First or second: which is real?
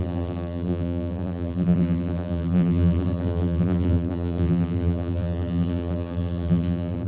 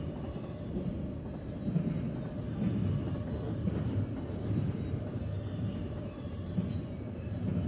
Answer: second